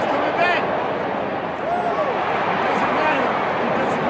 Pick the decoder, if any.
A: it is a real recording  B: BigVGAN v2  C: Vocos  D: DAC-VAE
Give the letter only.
A